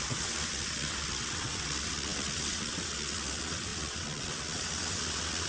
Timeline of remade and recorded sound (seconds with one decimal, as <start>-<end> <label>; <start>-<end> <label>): 0.0-5.5 remade